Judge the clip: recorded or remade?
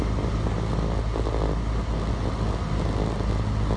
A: recorded